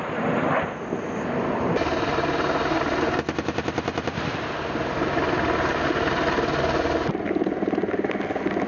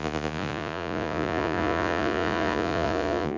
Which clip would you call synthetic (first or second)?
second